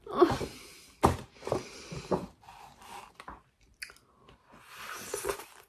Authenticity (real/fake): real